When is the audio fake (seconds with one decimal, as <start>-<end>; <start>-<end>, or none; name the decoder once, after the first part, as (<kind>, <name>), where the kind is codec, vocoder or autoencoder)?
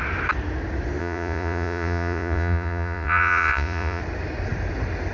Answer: 1.0-4.0 (vocoder, Vocos)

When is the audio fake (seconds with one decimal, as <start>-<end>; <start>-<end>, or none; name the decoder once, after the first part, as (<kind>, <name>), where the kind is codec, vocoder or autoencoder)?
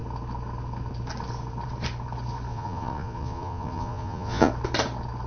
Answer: 2.5-4.5 (vocoder, Vocos)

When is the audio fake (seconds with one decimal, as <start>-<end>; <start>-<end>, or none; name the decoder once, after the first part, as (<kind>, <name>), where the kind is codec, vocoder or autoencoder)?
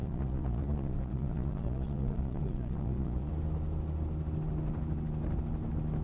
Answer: 0.0-3.3 (vocoder, Vocos)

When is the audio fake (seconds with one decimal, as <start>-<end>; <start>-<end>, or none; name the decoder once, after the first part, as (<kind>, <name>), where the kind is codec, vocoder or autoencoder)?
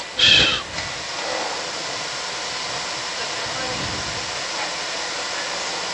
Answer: none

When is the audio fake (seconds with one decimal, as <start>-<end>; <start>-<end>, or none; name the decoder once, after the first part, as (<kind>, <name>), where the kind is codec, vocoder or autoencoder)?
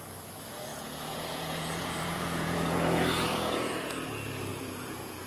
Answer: 0.7-3.9 (vocoder, Vocos); 4.5-5.3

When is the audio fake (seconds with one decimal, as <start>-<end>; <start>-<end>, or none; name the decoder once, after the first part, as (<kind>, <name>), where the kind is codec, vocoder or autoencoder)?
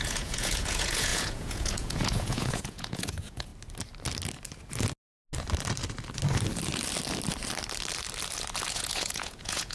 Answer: 0.0-3.5 (vocoder, Vocos); 8.7-9.7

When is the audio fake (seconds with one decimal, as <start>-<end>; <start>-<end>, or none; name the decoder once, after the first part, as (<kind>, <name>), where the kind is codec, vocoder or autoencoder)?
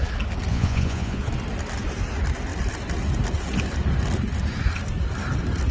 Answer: 0.5-1.2 (vocoder, Vocos)